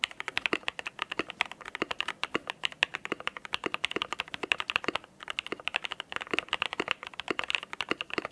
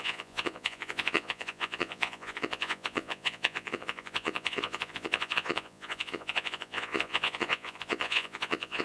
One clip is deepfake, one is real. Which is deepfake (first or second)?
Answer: second